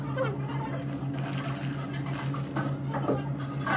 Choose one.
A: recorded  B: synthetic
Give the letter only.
A